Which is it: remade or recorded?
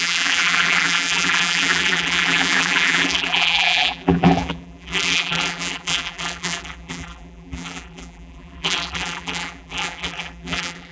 remade